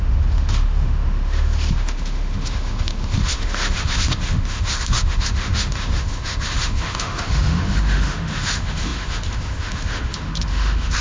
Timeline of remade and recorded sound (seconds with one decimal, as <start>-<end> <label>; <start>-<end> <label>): 0.0-11.0 remade